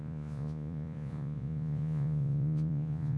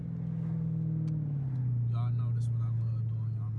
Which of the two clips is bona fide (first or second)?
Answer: second